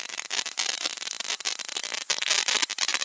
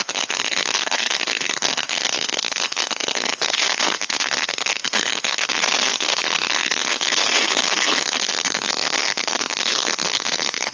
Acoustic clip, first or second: first